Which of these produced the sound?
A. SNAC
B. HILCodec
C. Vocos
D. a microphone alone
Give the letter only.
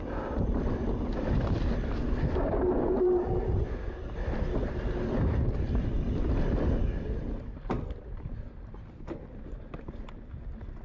D